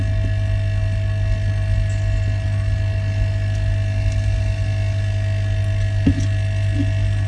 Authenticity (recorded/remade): recorded